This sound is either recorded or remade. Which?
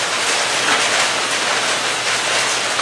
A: recorded